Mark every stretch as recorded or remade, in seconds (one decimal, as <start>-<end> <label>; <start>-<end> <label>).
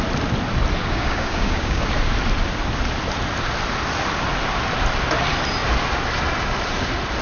0.0-0.8 recorded; 0.8-1.8 remade; 1.8-7.2 recorded